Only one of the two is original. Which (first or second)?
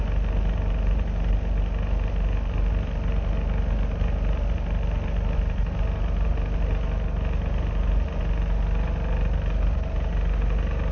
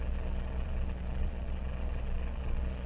first